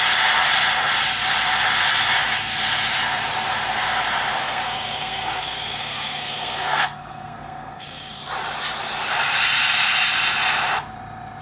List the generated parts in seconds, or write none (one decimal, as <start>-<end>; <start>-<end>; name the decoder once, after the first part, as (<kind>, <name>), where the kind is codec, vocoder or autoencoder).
4.4-8.2 (codec, SNAC)

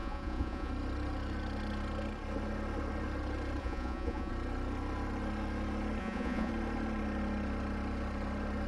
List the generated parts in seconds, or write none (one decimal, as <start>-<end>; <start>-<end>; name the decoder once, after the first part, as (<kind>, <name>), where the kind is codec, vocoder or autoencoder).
0.0-0.7 (vocoder, Vocos); 3.6-4.3; 6.0-6.5

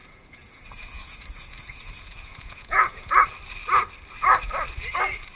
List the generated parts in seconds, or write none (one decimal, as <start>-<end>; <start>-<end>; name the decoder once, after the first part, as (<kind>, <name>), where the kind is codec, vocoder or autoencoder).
0.0-3.2 (vocoder, Vocos)

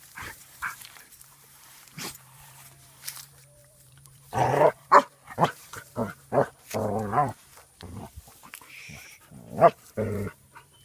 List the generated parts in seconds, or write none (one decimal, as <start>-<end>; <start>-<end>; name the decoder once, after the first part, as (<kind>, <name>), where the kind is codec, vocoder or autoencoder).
0.0-10.8 (vocoder, BigVGAN v2)

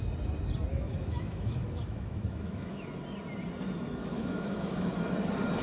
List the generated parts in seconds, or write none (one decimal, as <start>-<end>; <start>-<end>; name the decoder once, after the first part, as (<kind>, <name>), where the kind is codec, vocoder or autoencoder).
0.7-3.0 (autoencoder, DAC-VAE); 4.0-4.9

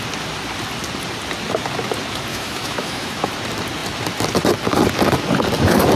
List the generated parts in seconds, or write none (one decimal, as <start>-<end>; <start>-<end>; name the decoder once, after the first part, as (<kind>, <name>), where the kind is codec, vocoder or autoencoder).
2.3-3.3 (autoencoder, DAC-VAE)

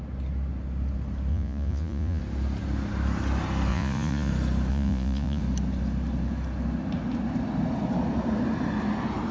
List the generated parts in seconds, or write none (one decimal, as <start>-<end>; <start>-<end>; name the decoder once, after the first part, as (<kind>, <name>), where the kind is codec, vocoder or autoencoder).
1.3-2.2 (vocoder, Vocos); 3.7-4.3; 4.7-5.4